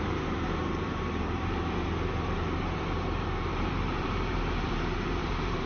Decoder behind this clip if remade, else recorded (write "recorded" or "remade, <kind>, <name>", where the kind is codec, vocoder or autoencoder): remade, vocoder, BigVGAN v2